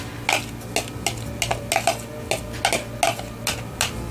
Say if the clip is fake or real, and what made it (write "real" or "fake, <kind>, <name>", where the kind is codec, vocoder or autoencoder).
real